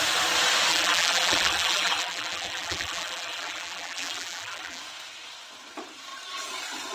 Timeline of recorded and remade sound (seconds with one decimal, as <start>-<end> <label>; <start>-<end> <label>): 0.0-0.7 recorded; 0.7-4.8 remade; 4.8-6.9 recorded